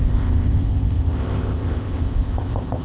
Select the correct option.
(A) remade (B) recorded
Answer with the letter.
A